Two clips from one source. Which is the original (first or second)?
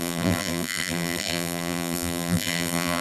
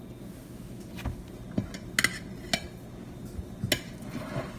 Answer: second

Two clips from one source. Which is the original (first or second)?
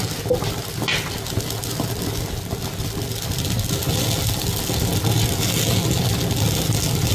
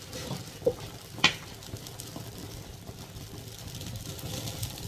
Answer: first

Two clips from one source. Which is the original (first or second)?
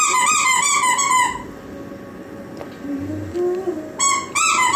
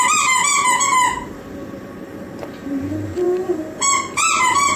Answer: first